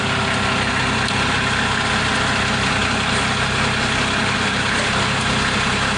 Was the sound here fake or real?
real